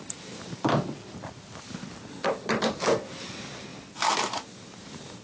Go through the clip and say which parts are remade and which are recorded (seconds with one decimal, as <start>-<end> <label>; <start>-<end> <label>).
0.0-5.2 recorded